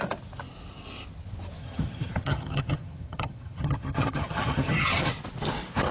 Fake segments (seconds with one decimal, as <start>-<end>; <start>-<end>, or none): 1.6-5.1